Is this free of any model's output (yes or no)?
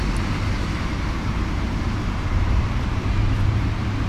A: no